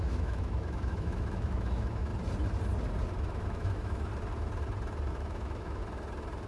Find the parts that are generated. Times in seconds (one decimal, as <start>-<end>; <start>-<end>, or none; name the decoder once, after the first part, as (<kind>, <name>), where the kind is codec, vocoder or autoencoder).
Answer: 0.0-2.1 (autoencoder, DAC-VAE); 3.3-4.1; 5.1-5.8